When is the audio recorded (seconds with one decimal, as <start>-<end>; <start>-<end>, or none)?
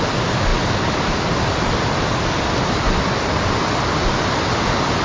0.0-5.0